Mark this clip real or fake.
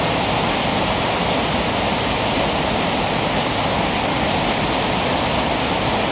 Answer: real